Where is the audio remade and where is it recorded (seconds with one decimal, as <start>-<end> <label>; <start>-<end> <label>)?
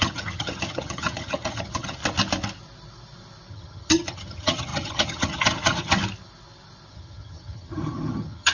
0.0-2.0 remade; 2.0-3.5 recorded; 3.5-6.0 remade; 6.0-6.9 recorded; 6.9-8.5 remade